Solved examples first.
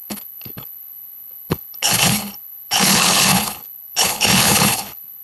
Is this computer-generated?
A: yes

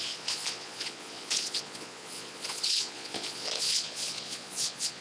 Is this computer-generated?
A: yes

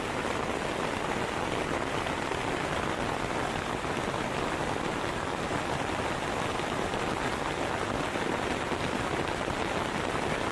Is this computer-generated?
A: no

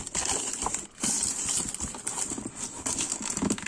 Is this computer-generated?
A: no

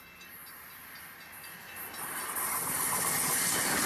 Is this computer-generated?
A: no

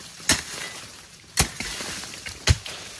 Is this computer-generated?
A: no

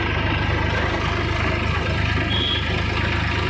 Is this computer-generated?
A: no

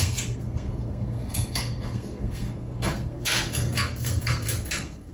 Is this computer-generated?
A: yes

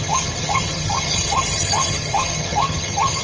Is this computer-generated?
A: yes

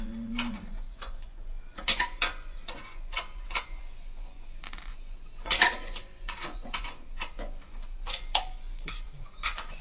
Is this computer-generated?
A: yes